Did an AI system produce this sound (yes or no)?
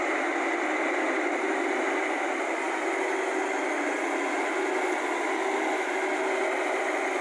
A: no